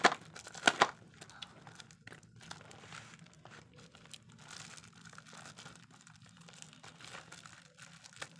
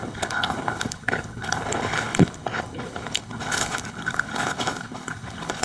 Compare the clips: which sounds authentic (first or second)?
first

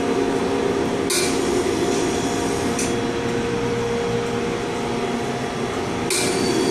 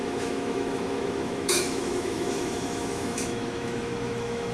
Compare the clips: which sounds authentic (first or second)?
first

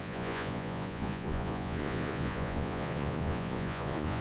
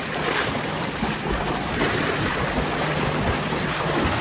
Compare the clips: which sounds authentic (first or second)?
second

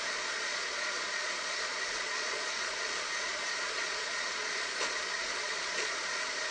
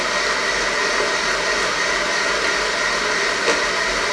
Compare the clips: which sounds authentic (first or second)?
second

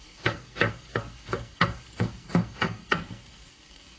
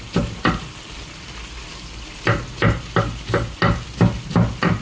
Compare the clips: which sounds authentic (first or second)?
second